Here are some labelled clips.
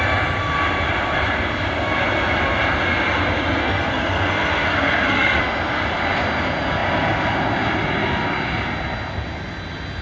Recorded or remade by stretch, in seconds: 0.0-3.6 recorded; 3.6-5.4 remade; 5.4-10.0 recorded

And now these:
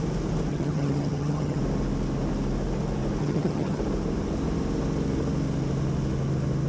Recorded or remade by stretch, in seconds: 0.0-0.5 recorded; 0.5-1.6 remade; 1.6-3.2 recorded; 3.2-3.8 remade; 3.8-6.7 recorded

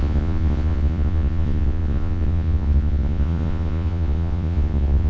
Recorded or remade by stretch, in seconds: 0.0-5.1 remade